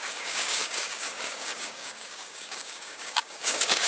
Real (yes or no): no